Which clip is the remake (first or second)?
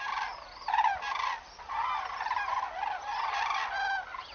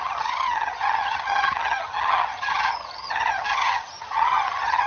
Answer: second